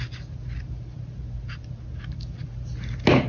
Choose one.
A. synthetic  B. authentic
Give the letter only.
B